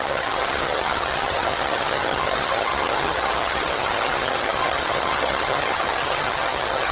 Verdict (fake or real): fake